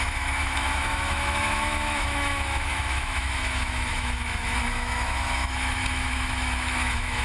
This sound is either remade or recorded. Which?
remade